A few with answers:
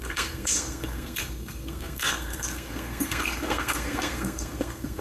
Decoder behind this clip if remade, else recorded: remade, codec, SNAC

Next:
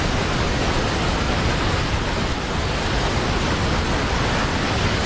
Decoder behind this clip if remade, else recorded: recorded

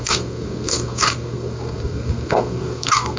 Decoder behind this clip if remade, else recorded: remade, codec, SNAC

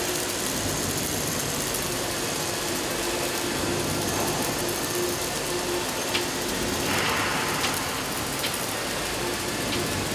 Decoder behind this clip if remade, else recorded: recorded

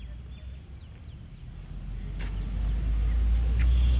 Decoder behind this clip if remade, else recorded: recorded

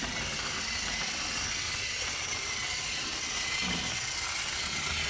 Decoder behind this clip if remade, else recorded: recorded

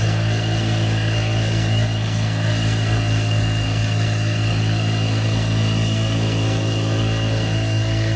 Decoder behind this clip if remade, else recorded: remade, codec, SNAC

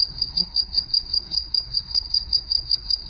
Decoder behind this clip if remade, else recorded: remade, codec, SNAC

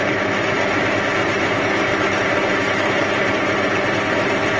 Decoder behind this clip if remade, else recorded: recorded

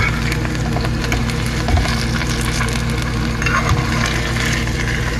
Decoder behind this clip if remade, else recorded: recorded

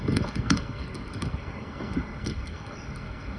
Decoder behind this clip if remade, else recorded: remade, codec, SNAC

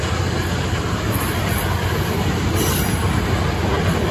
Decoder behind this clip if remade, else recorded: recorded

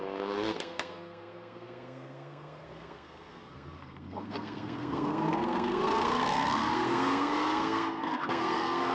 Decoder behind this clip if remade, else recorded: remade, codec, SNAC